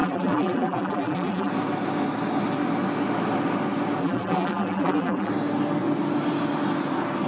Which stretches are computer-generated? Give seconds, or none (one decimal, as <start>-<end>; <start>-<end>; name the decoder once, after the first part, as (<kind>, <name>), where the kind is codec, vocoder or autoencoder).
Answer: 0.0-1.5 (vocoder, BigVGAN v2); 4.0-5.3

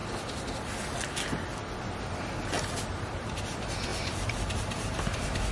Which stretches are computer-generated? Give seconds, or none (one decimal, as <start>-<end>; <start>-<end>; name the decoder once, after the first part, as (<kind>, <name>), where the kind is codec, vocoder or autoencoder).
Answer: 3.9-5.0 (vocoder, BigVGAN v2)

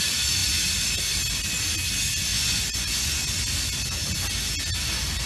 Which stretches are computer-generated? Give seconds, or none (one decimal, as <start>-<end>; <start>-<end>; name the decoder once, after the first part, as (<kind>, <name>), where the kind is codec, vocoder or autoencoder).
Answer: 2.3-3.2 (vocoder, Vocos)